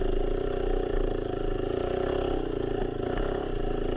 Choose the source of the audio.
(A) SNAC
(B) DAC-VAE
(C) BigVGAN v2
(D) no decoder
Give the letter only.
D